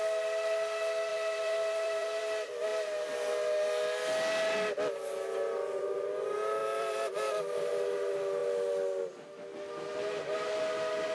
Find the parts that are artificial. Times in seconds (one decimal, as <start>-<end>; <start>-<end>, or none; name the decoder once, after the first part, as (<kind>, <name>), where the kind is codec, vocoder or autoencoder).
1.1-2.2 (vocoder, BigVGAN v2); 6.6-7.7